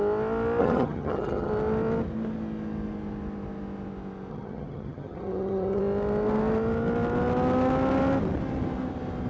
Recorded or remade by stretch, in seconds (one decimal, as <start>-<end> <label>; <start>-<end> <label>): 0.0-0.6 recorded; 0.6-1.5 remade; 1.5-4.3 recorded; 4.3-5.8 remade; 5.8-9.3 recorded